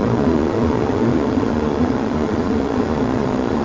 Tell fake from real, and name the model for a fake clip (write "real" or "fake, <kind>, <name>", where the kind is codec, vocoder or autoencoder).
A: fake, vocoder, Vocos